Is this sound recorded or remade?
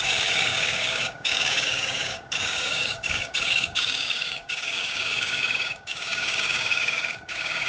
remade